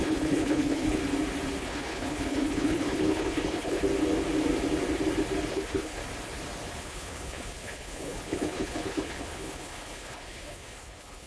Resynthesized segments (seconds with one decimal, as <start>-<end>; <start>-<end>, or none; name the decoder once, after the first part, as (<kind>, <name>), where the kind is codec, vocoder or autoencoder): 0.0-1.0 (codec, HILCodec); 1.6-3.8; 5.5-6.0; 6.8-11.3